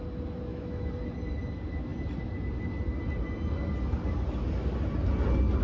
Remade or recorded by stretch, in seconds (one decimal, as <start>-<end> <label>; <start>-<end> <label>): 0.0-0.5 recorded; 0.5-1.0 remade; 1.0-5.6 recorded

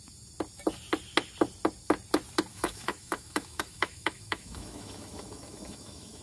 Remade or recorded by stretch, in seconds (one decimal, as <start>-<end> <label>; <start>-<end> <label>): 0.0-2.5 recorded; 2.5-6.2 remade